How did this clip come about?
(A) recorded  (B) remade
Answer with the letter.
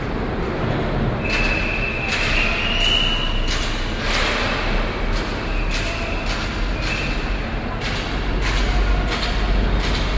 A